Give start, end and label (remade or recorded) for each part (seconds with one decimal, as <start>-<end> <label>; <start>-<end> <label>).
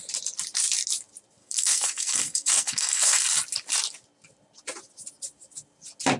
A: 0.0-1.4 recorded; 1.4-3.2 remade; 3.2-6.2 recorded